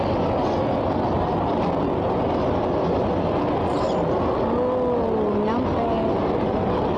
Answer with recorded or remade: recorded